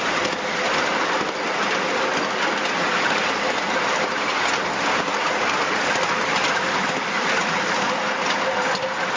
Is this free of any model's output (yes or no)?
yes